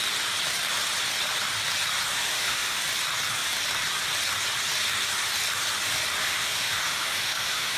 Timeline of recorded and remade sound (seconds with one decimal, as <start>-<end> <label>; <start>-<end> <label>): 0.0-2.2 recorded; 2.2-2.8 remade; 2.8-6.2 recorded; 6.2-7.8 remade